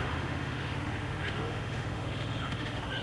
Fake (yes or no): yes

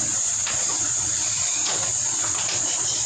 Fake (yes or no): yes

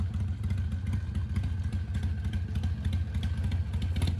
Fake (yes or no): no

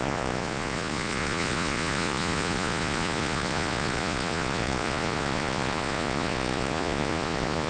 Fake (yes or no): yes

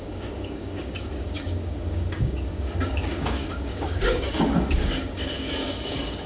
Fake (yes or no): yes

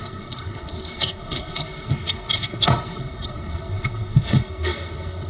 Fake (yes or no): yes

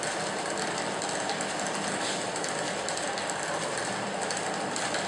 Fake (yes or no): no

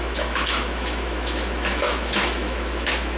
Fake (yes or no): yes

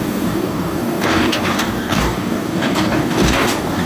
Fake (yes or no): yes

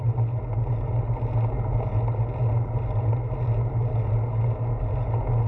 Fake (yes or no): no